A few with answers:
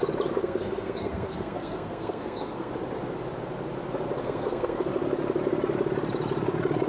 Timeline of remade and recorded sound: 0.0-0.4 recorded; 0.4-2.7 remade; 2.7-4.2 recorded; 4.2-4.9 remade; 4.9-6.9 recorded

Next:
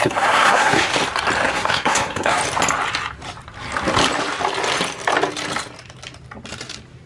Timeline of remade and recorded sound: 0.0-0.9 remade; 0.9-1.5 recorded; 1.5-2.4 remade; 2.4-7.1 recorded

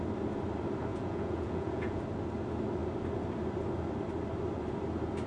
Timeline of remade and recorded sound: 0.0-0.9 recorded; 0.9-2.0 remade; 2.0-5.3 recorded

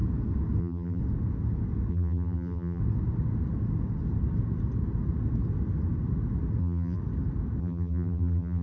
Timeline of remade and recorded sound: 0.0-0.6 recorded; 0.6-1.0 remade; 1.0-1.9 recorded; 1.9-2.8 remade; 2.8-6.6 recorded; 6.6-7.0 remade; 7.0-7.6 recorded; 7.6-8.6 remade

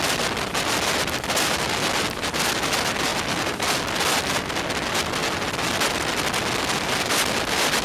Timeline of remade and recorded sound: 0.0-7.8 recorded